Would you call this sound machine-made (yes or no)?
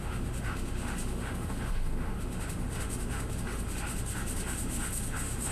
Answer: yes